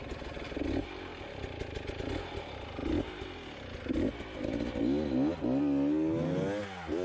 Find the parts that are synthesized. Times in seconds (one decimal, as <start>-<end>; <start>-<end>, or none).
none